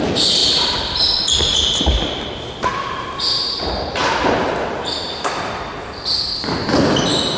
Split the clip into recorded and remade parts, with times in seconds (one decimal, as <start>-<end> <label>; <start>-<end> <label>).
0.0-0.4 recorded; 0.4-2.2 remade; 2.2-2.7 recorded; 2.7-3.6 remade; 3.6-7.4 recorded

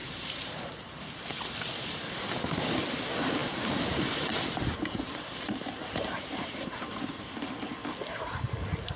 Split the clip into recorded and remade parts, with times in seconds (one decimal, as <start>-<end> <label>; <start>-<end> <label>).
0.0-1.0 remade; 1.0-3.4 recorded; 3.4-7.0 remade; 7.0-9.0 recorded

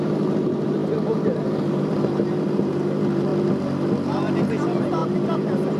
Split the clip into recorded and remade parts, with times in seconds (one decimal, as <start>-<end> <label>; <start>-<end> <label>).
0.0-3.3 remade; 3.3-4.5 recorded; 4.5-5.8 remade

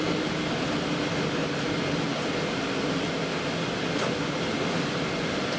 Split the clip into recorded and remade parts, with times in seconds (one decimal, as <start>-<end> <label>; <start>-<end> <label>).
0.0-5.6 recorded